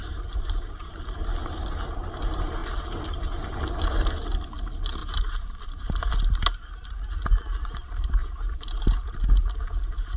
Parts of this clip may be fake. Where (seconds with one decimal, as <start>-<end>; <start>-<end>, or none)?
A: 0.0-0.9; 5.0-6.1; 8.2-8.9